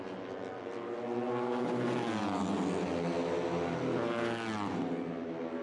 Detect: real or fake real